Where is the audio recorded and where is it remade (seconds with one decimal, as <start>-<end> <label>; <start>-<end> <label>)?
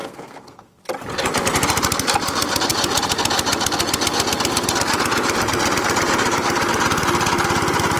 0.0-0.8 remade; 0.8-8.0 recorded